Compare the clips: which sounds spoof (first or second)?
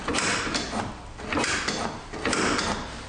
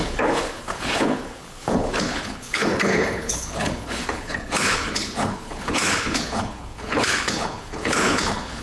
second